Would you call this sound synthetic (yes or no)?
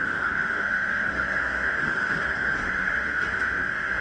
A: yes